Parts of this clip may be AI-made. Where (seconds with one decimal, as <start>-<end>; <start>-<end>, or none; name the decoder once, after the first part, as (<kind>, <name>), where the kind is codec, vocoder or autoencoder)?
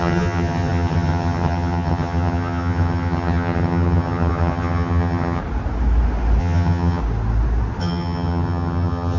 0.0-5.4 (vocoder, HiFi-GAN); 6.4-7.0; 7.8-9.2